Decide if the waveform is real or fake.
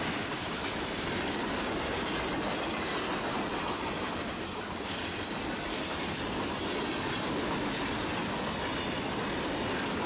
fake